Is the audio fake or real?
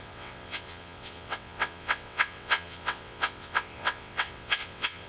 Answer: fake